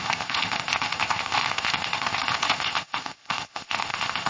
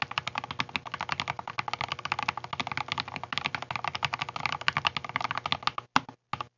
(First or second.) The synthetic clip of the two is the first